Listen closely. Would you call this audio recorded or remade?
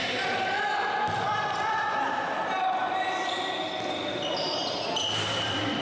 recorded